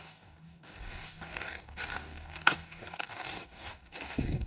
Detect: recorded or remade remade